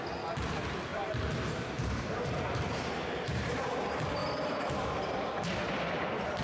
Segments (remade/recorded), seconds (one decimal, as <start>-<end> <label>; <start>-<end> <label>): 0.0-0.9 recorded; 0.9-3.8 remade; 3.8-4.2 recorded; 4.2-5.3 remade; 5.3-6.4 recorded